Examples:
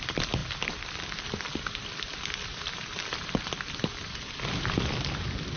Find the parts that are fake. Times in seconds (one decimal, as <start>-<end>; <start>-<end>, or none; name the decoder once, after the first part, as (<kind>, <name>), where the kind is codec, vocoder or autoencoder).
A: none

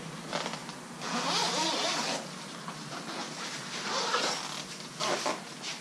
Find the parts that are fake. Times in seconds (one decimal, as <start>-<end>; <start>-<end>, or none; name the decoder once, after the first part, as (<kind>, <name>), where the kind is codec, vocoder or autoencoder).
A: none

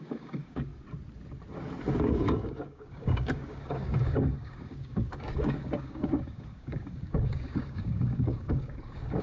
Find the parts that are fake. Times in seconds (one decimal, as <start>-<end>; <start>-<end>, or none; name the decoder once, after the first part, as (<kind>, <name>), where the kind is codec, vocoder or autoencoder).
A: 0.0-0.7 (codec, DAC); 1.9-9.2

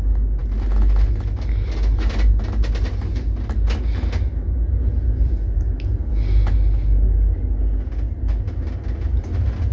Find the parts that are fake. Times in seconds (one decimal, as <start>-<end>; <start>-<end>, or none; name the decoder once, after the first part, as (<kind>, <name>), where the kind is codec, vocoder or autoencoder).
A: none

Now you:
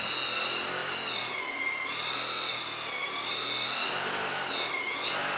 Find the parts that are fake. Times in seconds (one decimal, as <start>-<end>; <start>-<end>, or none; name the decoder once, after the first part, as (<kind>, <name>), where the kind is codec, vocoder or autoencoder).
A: 0.8-2.6 (vocoder, BigVGAN v2); 3.0-5.0